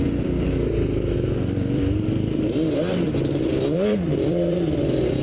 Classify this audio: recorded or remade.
remade